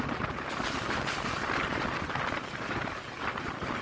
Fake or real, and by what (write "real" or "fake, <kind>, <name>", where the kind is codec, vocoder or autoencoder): real